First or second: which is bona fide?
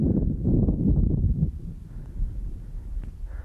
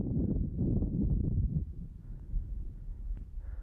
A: first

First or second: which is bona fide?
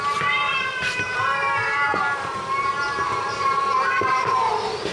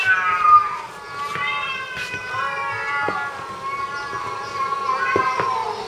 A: second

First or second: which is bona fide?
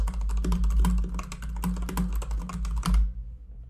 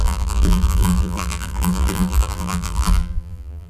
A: first